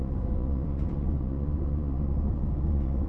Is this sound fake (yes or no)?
yes